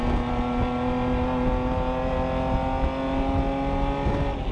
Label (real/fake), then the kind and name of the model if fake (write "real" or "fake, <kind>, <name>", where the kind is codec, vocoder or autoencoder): real